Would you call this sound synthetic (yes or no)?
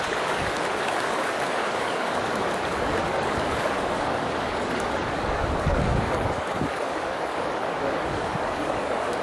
yes